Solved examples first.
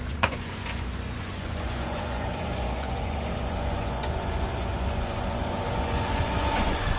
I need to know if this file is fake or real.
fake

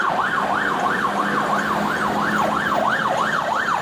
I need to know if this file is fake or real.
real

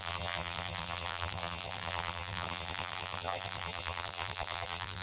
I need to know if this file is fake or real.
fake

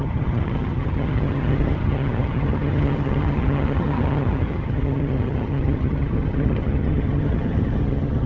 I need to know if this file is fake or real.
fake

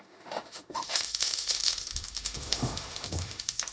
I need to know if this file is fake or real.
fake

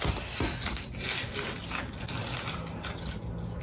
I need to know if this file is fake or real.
real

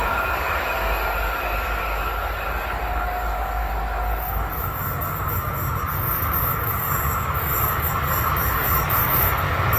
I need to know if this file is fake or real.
fake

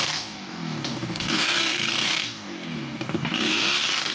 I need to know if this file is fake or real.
fake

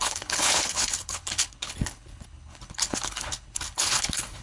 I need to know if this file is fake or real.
fake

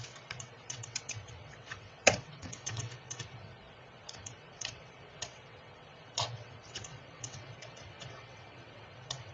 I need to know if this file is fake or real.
fake